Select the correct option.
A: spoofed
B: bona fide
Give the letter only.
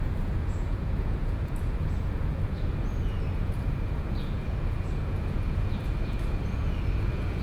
A